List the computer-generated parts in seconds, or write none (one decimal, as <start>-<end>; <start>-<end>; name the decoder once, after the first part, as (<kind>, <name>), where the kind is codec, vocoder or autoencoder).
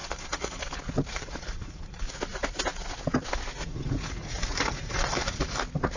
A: 0.0-0.6 (vocoder, Vocos); 1.1-2.1; 3.6-5.6